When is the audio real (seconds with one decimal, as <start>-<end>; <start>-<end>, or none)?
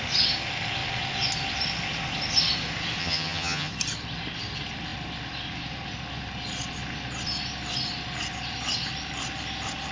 0.0-3.0; 3.7-9.9